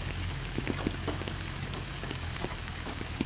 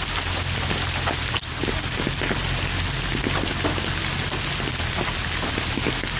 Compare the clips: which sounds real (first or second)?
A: second